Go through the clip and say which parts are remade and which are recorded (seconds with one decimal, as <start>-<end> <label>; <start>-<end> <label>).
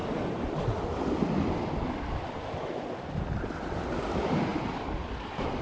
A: 0.0-4.5 remade; 4.5-5.1 recorded; 5.1-5.6 remade